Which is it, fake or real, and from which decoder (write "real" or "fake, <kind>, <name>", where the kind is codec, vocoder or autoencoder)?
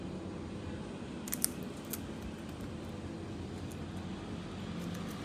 real